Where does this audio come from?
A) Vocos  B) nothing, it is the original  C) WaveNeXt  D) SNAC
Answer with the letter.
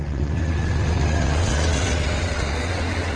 C